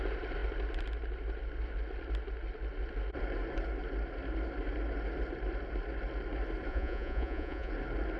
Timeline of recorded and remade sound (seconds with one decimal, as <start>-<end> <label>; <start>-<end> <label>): 0.0-6.7 recorded; 6.7-7.7 remade; 7.7-8.2 recorded